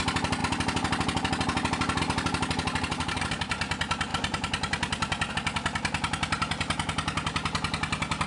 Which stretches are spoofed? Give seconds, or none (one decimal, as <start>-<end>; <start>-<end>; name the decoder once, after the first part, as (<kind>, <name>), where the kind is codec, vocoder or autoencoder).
none